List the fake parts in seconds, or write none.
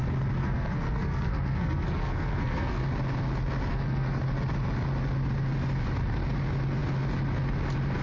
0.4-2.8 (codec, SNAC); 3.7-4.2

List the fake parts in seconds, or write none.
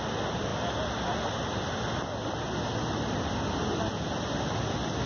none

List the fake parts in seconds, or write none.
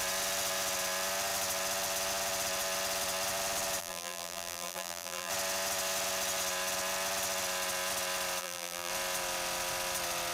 3.8-5.3 (vocoder, BigVGAN v2); 8.4-8.9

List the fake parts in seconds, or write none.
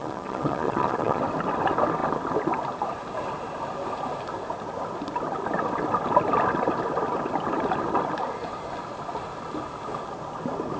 0.0-1.2 (vocoder, Vocos)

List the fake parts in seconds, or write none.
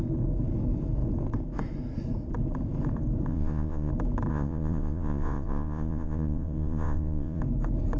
3.3-3.9 (vocoder, Vocos); 4.3-7.4